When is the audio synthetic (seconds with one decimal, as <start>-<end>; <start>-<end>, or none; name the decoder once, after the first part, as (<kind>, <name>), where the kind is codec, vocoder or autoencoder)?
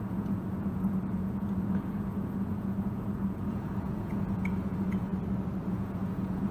0.0-5.1 (vocoder, Vocos); 5.7-6.5